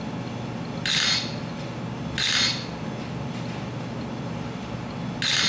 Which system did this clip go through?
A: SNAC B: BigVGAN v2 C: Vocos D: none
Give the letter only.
D